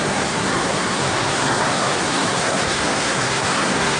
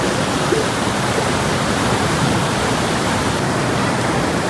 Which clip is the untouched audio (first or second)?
second